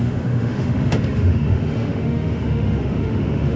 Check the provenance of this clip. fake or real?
fake